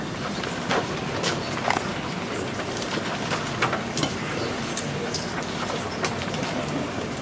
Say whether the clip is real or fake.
real